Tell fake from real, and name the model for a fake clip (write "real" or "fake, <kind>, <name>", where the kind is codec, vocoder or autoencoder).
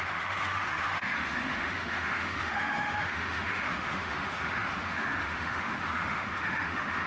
fake, autoencoder, DAC-VAE